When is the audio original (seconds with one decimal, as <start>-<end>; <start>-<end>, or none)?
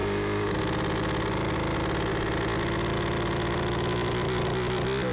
0.6-5.1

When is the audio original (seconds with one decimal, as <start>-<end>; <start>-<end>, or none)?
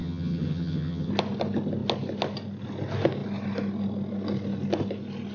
1.1-5.3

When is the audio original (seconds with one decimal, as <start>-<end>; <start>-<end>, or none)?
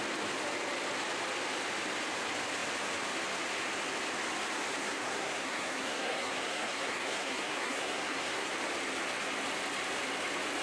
0.0-4.8; 8.5-10.6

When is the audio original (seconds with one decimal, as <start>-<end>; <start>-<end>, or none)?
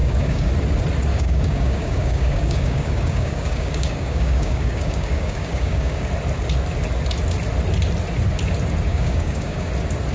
0.5-1.1; 6.1-8.9; 9.7-10.1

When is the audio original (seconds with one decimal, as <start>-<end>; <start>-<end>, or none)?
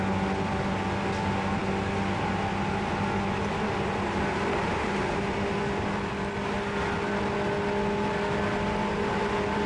0.0-9.7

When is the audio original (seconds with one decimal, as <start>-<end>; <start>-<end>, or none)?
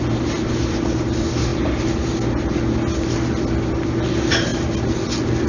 0.0-5.5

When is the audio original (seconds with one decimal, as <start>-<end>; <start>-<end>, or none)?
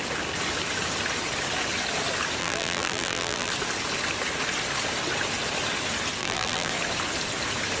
0.0-2.4; 3.5-6.2; 6.7-7.8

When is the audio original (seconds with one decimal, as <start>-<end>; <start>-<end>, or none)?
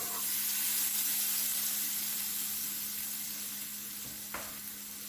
0.0-5.1